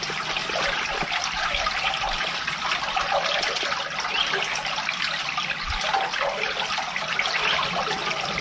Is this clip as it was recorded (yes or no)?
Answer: yes